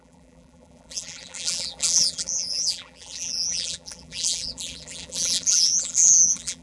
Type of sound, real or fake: fake